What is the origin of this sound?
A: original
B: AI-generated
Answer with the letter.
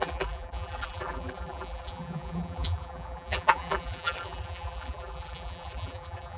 B